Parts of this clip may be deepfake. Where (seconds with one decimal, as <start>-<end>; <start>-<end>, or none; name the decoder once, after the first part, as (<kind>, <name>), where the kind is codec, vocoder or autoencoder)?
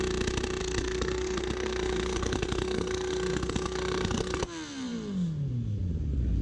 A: 0.6-4.4 (codec, SNAC)